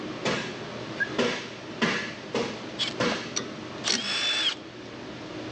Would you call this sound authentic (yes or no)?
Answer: yes